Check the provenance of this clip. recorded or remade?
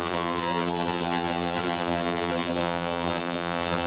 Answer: remade